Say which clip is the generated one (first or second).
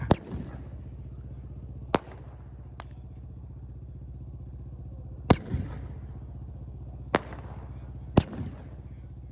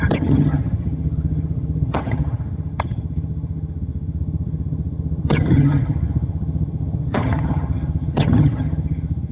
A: second